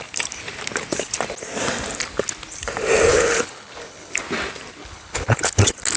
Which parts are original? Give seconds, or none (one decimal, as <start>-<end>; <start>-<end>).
0.0-3.1; 4.1-4.8; 5.6-6.0

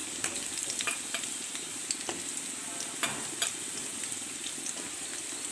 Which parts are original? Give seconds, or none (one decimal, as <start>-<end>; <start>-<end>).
0.0-5.5

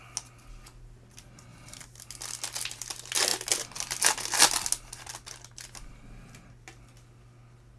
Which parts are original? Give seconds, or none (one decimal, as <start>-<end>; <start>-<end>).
0.0-7.8

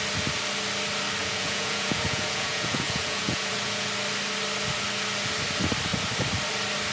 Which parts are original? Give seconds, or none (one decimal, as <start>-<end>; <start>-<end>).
0.0-1.2; 3.9-6.9

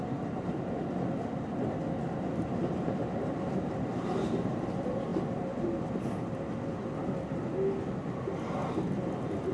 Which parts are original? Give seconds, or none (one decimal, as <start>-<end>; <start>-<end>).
0.0-2.6; 4.3-9.5